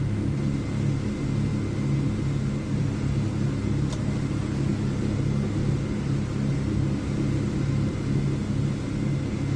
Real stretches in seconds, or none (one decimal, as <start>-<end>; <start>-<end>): 0.0-9.6